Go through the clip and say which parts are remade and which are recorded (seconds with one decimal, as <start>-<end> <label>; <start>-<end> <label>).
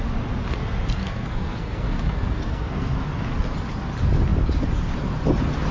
0.0-1.0 recorded; 1.0-2.9 remade; 2.9-5.7 recorded